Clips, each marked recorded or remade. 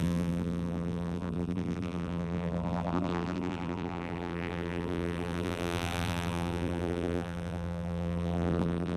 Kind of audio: remade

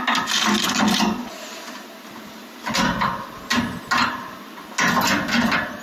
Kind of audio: recorded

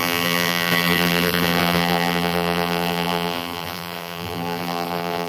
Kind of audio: remade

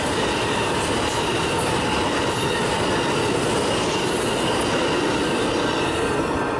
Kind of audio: recorded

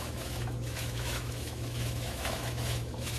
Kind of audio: remade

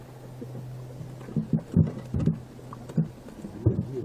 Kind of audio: recorded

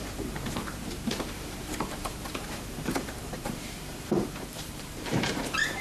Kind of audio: remade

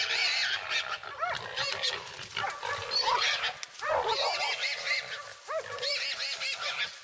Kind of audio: recorded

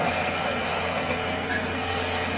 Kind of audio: remade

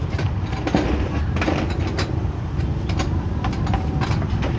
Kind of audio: recorded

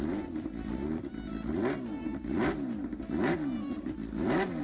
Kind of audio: recorded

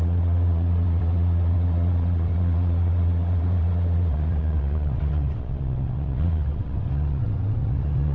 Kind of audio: remade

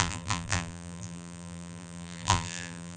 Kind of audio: remade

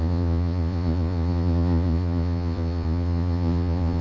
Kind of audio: remade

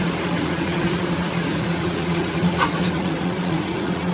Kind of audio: remade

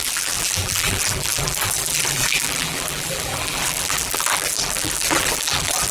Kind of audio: remade